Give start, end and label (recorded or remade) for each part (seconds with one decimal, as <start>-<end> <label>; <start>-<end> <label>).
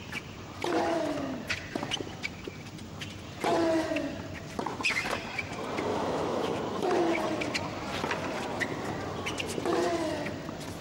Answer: 0.0-5.9 recorded; 5.9-6.6 remade; 6.6-10.8 recorded